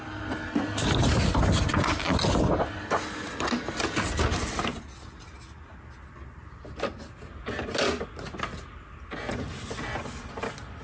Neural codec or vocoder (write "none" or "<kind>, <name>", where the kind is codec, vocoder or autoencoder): none